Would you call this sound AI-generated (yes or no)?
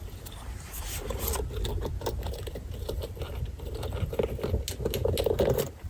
no